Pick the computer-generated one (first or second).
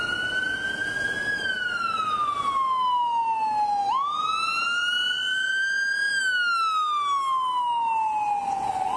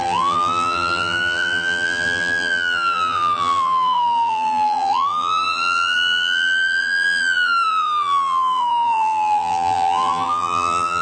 second